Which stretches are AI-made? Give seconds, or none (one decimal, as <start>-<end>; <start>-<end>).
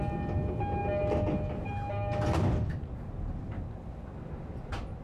none